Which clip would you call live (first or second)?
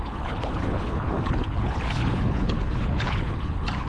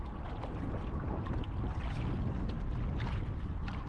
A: second